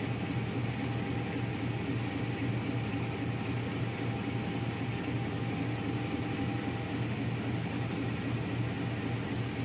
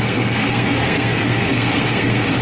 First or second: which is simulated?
second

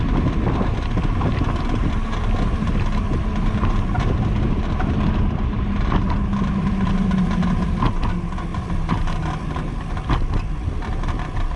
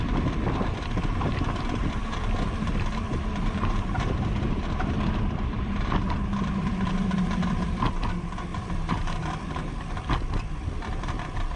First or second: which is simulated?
second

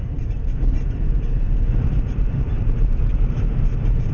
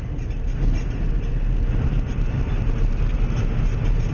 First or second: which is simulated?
first